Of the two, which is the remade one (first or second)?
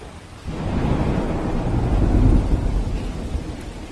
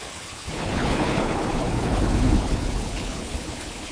second